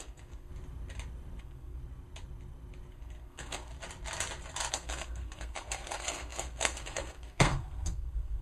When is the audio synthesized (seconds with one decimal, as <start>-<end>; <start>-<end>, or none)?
0.0-0.5; 1.4-1.8; 2.9-3.7; 4.7-8.4